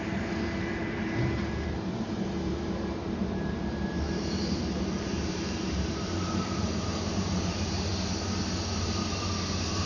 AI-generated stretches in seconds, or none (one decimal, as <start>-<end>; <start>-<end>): 0.0-7.9; 8.8-9.9